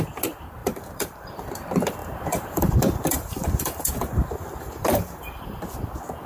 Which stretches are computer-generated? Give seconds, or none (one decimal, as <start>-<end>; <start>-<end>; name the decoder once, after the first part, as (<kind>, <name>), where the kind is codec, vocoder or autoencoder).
0.6-1.5 (vocoder, BigVGAN v2); 2.0-5.6